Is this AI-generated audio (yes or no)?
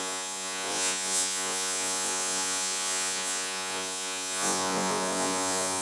yes